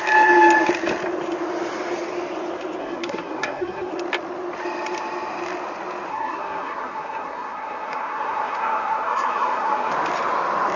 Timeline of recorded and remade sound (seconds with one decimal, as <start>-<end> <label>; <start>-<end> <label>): 0.0-2.8 recorded; 2.8-3.9 remade; 3.9-6.1 recorded; 6.1-9.9 remade; 9.9-10.8 recorded